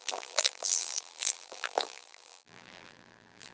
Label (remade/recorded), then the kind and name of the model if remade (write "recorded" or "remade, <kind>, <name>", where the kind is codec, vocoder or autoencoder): remade, vocoder, BigVGAN v2